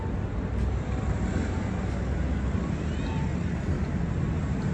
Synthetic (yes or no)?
no